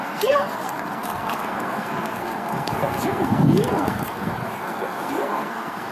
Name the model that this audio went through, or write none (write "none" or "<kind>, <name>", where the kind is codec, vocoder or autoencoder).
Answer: codec, SNAC